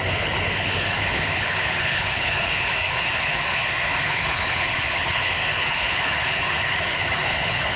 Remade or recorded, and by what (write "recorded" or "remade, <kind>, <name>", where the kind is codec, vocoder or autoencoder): remade, codec, HILCodec